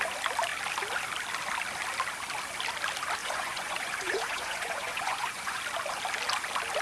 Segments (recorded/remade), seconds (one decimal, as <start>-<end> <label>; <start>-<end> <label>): 0.0-3.2 recorded; 3.2-5.6 remade; 5.6-6.8 recorded